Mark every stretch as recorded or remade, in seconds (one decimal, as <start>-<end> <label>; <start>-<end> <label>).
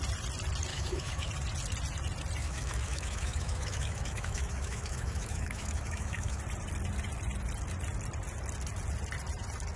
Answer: 0.0-0.7 recorded; 0.7-1.3 remade; 1.3-2.4 recorded; 2.4-6.4 remade; 6.4-9.8 recorded